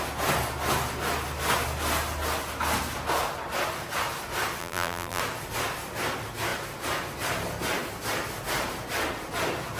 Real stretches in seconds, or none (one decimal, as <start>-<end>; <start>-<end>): 0.0-4.6; 5.2-9.8

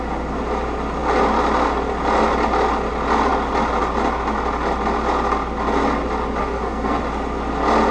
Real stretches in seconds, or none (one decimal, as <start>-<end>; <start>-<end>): 0.0-6.4; 7.0-7.9

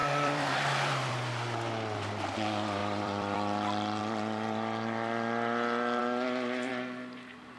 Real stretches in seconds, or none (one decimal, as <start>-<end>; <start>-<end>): 1.1-2.8; 4.0-7.6